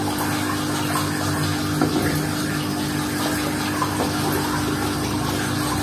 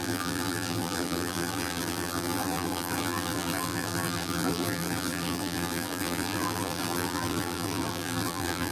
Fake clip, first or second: second